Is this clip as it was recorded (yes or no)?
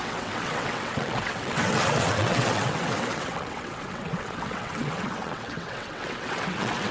no